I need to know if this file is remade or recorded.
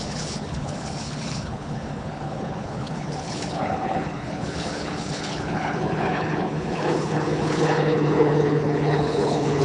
remade